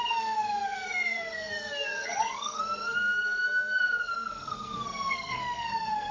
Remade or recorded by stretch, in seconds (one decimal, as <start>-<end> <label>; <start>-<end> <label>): 0.0-6.1 remade